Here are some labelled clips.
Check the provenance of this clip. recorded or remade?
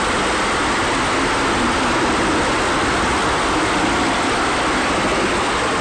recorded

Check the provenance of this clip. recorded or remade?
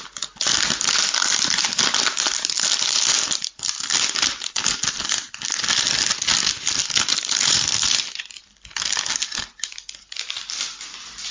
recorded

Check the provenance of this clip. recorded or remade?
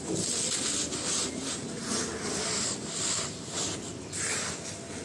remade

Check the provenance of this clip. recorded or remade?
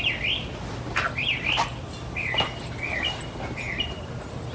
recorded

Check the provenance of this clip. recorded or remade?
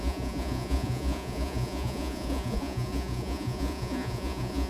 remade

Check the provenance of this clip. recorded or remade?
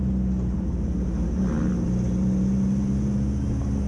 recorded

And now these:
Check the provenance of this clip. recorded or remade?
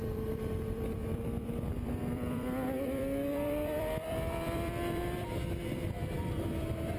remade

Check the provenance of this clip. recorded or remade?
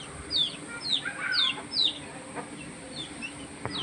recorded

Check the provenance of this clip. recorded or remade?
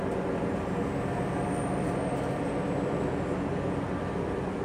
recorded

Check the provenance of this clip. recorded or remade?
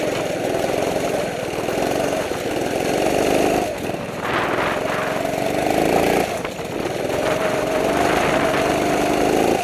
recorded